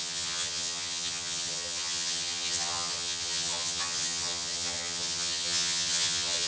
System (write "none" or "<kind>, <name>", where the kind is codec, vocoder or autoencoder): vocoder, HiFi-GAN